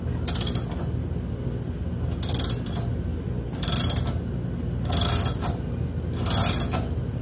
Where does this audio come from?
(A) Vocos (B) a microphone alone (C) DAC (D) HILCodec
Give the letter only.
B